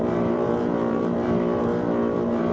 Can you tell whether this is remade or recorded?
remade